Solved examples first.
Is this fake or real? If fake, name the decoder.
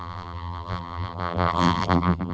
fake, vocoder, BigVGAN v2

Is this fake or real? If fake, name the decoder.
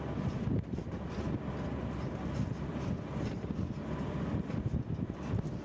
real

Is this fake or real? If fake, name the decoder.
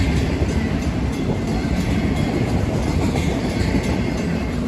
fake, vocoder, BigVGAN v2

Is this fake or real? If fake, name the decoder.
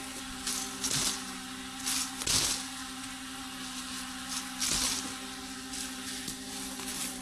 real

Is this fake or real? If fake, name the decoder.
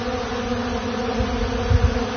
real